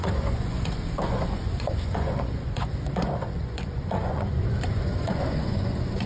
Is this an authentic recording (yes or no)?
no